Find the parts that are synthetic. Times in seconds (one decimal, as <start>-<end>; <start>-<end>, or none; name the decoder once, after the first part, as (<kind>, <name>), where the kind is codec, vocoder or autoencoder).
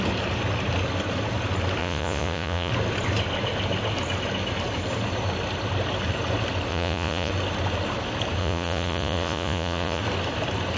1.8-2.7 (vocoder, Vocos); 6.7-7.3; 8.4-10.0